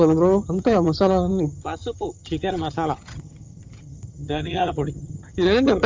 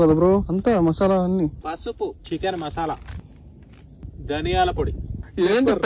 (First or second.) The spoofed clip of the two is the first